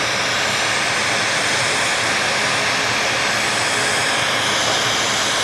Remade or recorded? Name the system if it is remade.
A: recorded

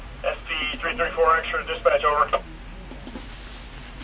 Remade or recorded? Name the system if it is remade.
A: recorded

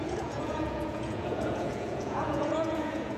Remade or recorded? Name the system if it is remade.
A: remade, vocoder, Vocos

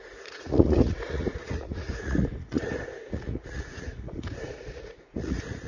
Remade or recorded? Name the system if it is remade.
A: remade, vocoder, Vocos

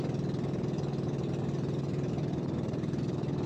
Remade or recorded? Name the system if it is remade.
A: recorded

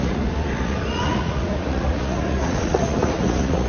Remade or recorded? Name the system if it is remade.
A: remade, vocoder, Vocos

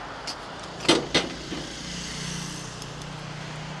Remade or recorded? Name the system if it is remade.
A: recorded